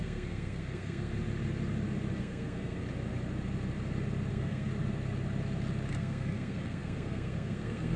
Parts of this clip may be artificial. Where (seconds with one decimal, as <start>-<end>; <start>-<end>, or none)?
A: 0.0-1.1; 2.2-2.8; 4.3-4.7; 5.9-8.0